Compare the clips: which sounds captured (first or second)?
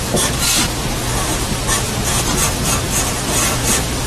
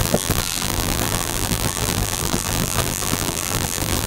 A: first